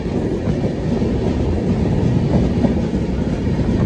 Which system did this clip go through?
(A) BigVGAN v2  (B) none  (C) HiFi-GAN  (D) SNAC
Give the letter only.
B